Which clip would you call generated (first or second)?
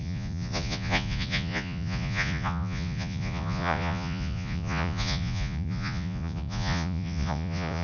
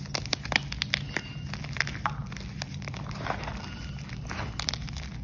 first